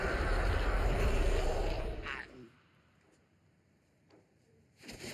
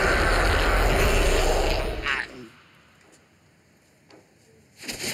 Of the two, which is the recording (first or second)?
second